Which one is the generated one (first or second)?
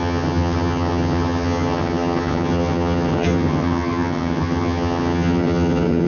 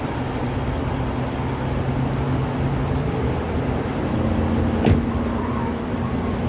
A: first